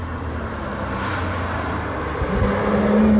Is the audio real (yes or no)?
yes